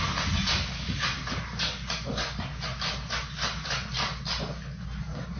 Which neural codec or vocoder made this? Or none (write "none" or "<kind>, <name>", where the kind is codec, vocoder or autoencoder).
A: none